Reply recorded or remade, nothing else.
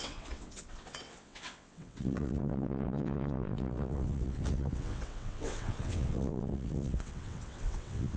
remade